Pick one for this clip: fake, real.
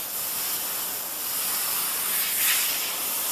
real